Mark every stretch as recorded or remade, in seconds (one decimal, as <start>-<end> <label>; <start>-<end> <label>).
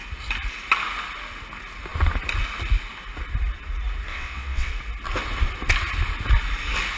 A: 0.0-4.1 recorded; 4.1-4.7 remade; 4.7-7.0 recorded